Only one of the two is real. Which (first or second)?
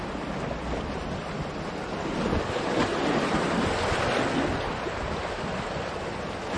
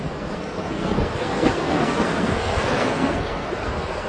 first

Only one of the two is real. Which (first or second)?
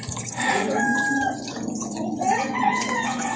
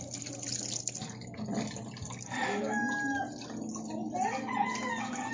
second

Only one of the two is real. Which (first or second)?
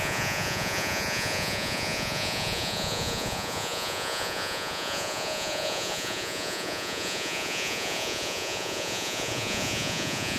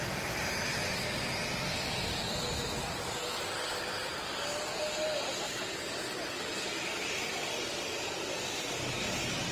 second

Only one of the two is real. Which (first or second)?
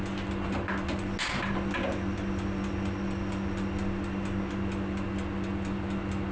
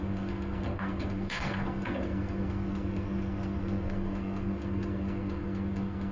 first